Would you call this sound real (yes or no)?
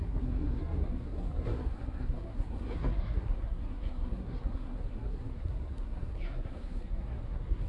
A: no